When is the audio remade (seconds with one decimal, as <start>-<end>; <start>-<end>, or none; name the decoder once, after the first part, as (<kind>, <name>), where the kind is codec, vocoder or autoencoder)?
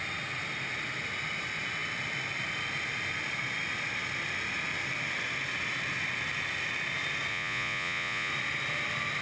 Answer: 7.3-8.3 (vocoder, Vocos)